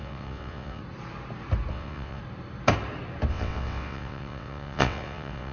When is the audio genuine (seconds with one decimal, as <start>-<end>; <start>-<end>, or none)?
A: 0.8-1.7; 2.2-3.3